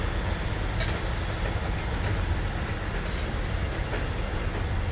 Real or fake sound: real